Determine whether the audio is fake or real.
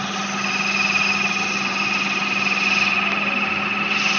real